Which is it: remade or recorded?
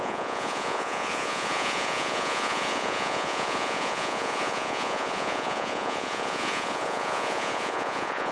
remade